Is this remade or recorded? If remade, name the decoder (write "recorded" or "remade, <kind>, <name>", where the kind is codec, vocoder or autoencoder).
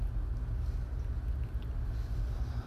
recorded